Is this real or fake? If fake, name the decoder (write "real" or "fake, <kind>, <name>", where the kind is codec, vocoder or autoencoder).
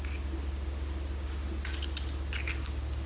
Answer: real